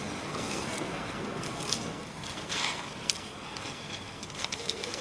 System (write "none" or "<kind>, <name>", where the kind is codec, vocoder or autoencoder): codec, SNAC